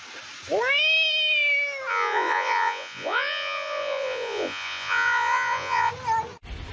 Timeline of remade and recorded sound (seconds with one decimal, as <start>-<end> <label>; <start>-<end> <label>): 0.0-1.9 recorded; 1.9-5.9 remade; 5.9-6.7 recorded